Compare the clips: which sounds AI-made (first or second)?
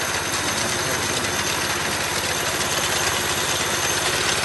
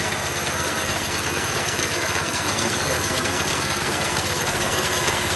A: second